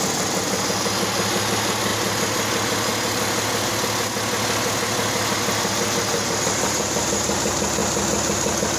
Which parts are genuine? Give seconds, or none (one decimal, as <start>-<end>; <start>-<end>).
0.0-8.8